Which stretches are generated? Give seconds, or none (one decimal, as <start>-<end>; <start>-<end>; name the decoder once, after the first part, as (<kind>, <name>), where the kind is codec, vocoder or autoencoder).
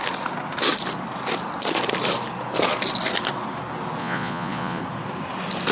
4.0-4.8 (vocoder, Vocos)